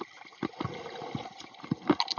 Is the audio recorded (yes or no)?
yes